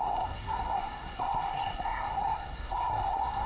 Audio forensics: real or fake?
fake